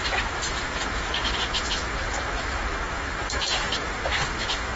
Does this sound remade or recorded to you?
remade